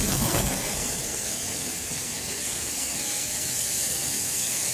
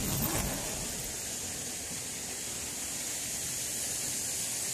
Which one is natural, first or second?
second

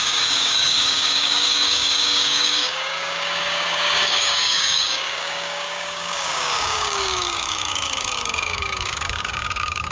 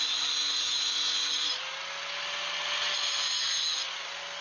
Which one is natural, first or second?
second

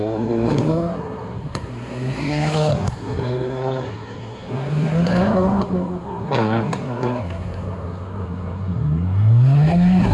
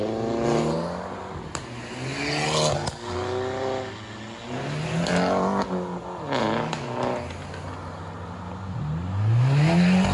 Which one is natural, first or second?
second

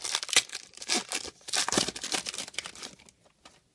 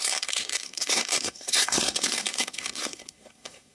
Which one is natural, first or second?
first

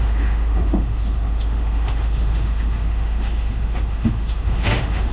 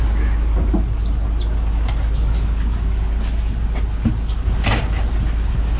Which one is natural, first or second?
second